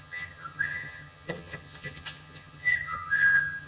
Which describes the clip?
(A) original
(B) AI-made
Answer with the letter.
B